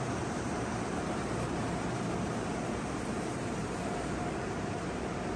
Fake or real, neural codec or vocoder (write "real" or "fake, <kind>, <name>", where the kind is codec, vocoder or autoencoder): fake, vocoder, BigVGAN v2